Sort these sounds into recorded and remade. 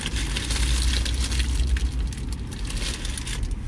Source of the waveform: recorded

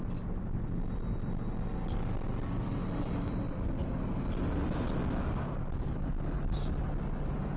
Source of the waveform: recorded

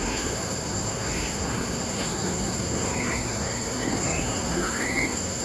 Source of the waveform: remade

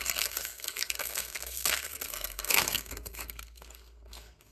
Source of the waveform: remade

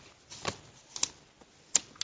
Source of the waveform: recorded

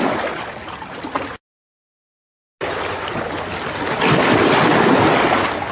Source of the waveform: recorded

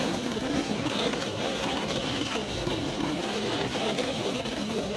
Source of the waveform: remade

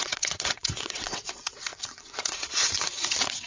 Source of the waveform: remade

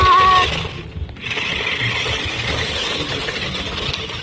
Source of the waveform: recorded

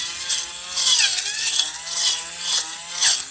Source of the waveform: recorded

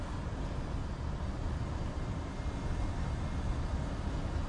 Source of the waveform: recorded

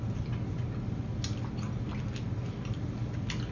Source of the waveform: recorded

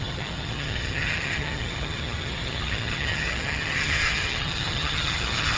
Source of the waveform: remade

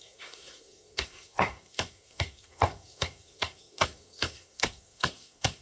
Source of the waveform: remade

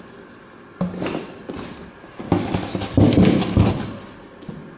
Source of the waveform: recorded